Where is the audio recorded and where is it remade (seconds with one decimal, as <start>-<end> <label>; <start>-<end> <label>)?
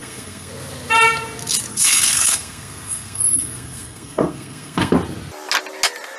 0.0-0.5 remade; 0.5-1.7 recorded; 1.7-4.9 remade; 4.9-6.2 recorded